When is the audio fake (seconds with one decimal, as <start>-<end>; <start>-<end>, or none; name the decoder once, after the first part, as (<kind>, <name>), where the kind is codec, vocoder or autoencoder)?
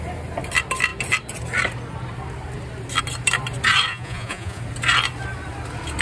3.9-4.6 (vocoder, Vocos)